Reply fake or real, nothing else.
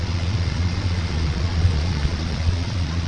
fake